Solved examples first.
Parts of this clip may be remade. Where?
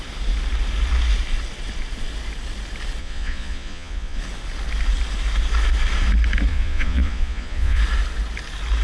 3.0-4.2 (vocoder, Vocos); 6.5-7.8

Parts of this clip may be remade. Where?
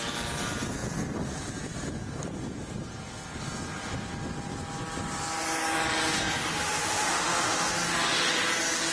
6.5-7.7 (autoencoder, DAC-VAE)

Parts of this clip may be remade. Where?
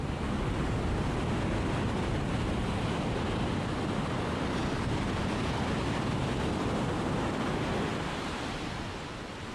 none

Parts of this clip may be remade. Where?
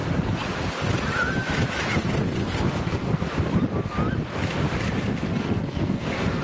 2.4-3.2 (codec, SNAC); 5.2-6.4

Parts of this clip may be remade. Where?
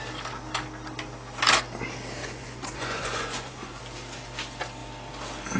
2.2-3.8 (vocoder, Vocos)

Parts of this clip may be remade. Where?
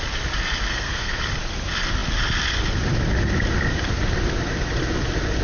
0.7-1.2 (codec, SNAC)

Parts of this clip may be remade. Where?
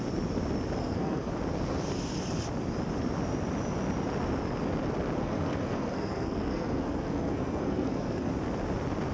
0.8-1.3 (codec, SNAC); 5.2-8.3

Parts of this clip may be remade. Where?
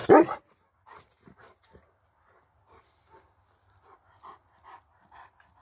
none